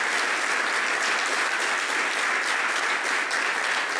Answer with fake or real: real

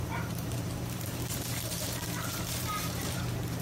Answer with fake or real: fake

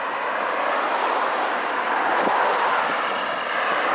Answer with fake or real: real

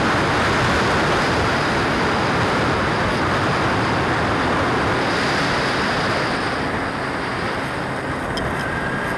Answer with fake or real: real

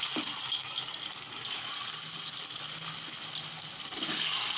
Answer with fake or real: real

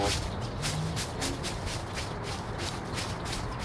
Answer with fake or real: real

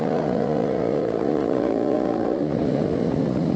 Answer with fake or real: fake